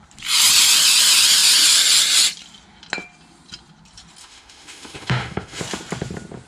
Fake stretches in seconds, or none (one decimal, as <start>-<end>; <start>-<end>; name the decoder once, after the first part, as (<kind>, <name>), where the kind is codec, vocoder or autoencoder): 4.2-5.6 (autoencoder, DAC-VAE)